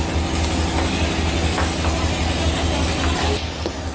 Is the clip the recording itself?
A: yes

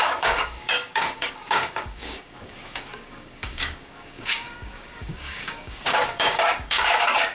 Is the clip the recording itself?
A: no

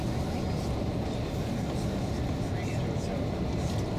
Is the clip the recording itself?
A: yes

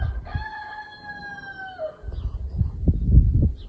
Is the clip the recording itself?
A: yes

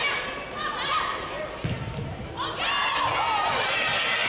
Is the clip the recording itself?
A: yes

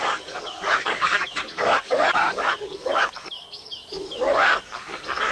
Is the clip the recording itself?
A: no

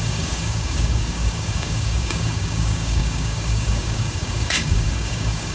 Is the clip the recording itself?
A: no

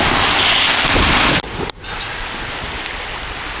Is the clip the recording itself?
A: yes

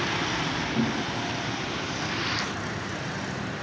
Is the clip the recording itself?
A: yes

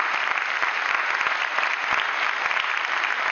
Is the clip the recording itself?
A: yes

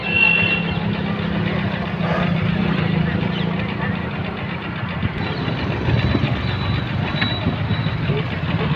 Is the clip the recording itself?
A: yes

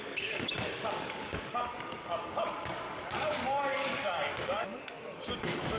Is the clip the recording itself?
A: no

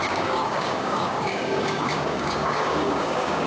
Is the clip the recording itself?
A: no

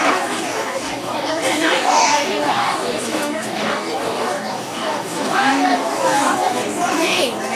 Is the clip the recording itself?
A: no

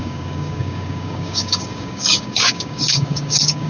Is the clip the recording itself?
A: no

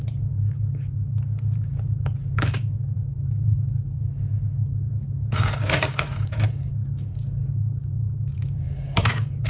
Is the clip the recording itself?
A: no